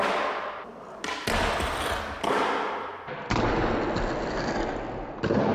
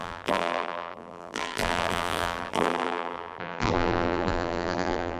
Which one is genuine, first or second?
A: first